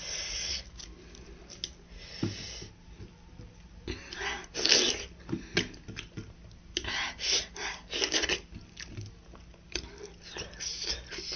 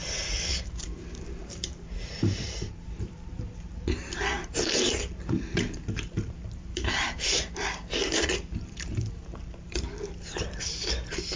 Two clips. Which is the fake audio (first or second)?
second